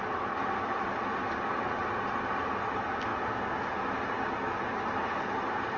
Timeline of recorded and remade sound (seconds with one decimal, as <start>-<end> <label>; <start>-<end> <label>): 0.0-5.8 recorded